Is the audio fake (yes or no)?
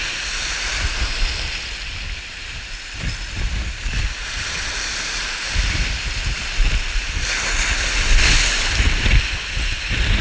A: no